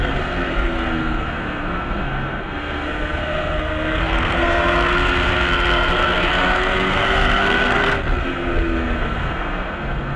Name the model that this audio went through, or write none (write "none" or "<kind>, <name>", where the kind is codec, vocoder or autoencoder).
codec, SNAC